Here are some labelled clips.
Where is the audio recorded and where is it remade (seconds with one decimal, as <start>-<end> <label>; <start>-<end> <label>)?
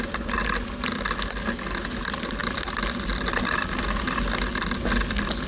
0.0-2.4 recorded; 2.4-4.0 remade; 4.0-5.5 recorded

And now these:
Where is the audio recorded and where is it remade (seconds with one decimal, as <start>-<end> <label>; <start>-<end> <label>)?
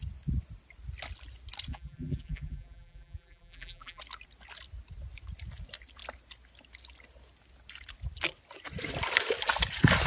0.0-1.7 recorded; 1.7-4.0 remade; 4.0-10.1 recorded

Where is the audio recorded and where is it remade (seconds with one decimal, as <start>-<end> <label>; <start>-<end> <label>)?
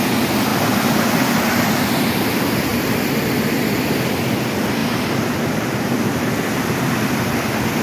0.0-0.5 remade; 0.5-1.9 recorded; 1.9-2.7 remade; 2.7-3.5 recorded; 3.5-7.8 remade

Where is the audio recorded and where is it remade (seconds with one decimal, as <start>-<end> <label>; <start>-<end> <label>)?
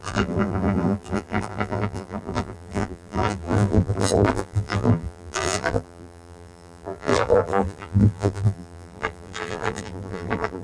0.0-10.6 remade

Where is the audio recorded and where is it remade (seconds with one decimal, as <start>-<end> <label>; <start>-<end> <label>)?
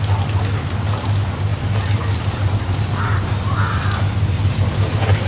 0.0-1.5 recorded; 1.5-4.5 remade; 4.5-5.3 recorded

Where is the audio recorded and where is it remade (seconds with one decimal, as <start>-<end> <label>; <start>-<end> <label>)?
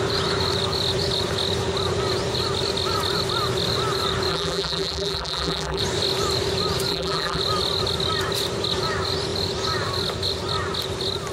0.0-4.3 recorded; 4.3-5.8 remade; 5.8-6.9 recorded; 6.9-7.4 remade; 7.4-11.3 recorded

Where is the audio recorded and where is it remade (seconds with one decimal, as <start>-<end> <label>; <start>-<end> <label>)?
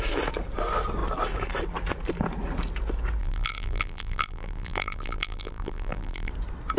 0.0-3.2 recorded; 3.2-6.3 remade; 6.3-6.8 recorded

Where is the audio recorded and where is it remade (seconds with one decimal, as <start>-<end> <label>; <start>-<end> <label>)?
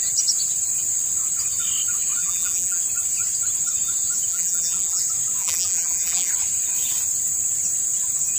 0.0-2.2 recorded; 2.2-2.8 remade; 2.8-4.3 recorded; 4.3-5.0 remade; 5.0-5.4 recorded; 5.4-6.3 remade; 6.3-8.4 recorded